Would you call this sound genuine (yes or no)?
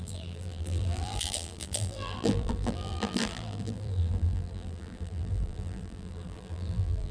no